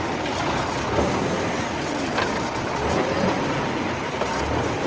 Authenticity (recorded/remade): recorded